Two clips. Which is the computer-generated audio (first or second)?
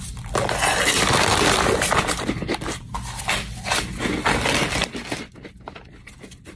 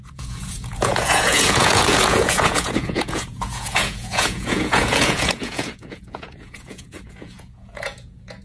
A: second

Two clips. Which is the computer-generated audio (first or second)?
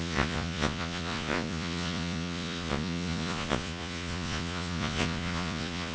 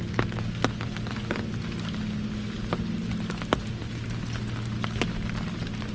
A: first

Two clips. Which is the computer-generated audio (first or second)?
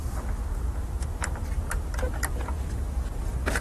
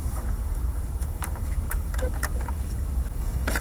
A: second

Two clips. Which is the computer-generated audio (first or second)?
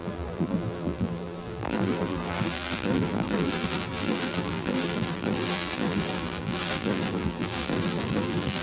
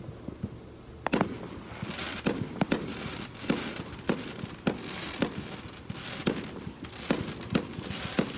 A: first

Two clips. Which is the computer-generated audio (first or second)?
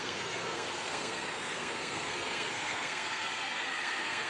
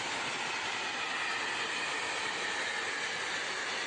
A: first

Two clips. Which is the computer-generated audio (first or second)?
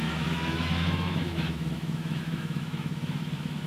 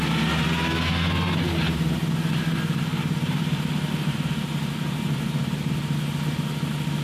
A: first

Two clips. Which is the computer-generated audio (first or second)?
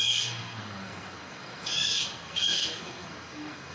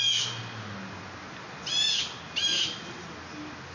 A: first